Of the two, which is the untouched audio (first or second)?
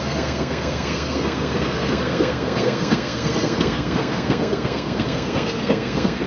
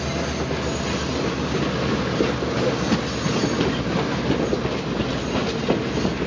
second